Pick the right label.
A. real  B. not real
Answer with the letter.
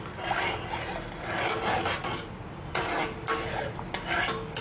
A